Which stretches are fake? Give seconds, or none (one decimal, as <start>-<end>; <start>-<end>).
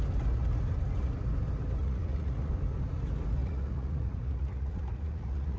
1.8-2.5; 3.4-5.6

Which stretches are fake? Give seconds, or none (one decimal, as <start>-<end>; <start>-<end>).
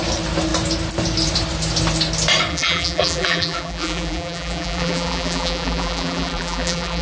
2.5-7.0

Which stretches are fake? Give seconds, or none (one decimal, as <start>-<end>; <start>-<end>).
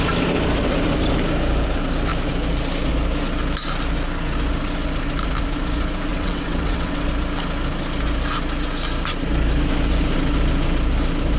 6.1-7.1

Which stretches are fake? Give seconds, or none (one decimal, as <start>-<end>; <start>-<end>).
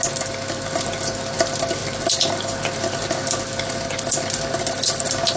none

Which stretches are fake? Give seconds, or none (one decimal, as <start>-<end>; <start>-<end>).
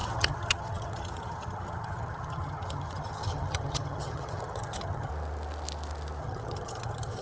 0.0-5.1; 6.2-7.2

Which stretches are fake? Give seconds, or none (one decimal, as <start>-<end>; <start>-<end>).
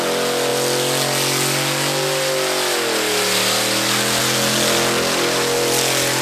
none